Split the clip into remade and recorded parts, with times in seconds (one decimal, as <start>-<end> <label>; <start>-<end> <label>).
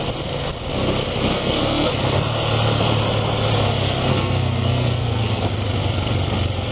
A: 0.0-1.3 recorded; 1.3-1.9 remade; 1.9-4.1 recorded; 4.1-5.4 remade; 5.4-6.7 recorded